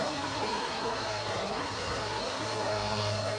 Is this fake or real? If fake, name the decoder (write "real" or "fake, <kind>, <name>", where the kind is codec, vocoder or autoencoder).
fake, codec, SNAC